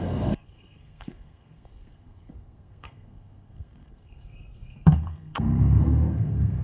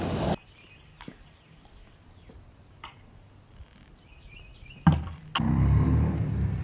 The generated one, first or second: first